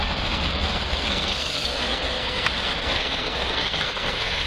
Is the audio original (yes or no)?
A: no